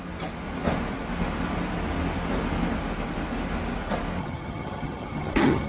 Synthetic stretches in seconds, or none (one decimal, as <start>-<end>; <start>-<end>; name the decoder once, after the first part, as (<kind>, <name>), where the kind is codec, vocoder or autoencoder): 4.2-5.7 (vocoder, HiFi-GAN)